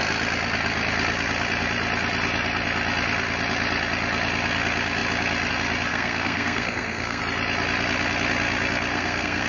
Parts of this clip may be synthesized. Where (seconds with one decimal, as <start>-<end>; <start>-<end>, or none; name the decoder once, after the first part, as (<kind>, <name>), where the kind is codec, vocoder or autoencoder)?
5.9-7.2 (codec, SNAC); 8.9-9.5